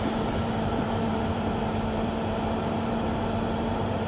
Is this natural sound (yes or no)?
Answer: no